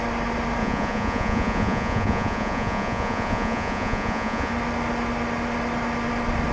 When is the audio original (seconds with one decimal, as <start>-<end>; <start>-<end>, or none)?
0.0-0.6; 4.5-6.5